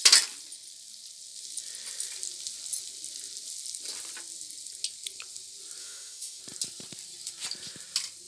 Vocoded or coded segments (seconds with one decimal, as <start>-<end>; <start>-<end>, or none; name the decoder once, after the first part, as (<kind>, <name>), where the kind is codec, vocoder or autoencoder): 5.8-6.4 (autoencoder, DAC-VAE)